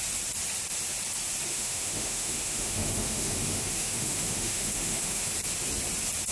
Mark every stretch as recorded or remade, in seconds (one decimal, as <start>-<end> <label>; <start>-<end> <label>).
0.0-1.5 recorded; 1.5-5.3 remade; 5.3-6.3 recorded